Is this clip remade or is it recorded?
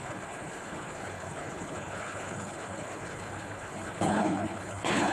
remade